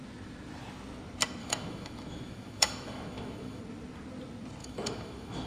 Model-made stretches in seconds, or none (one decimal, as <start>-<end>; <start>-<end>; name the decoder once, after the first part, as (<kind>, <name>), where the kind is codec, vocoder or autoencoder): 1.4-3.6 (autoencoder, DAC-VAE); 4.6-5.5